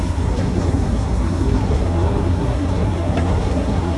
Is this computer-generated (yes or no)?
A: yes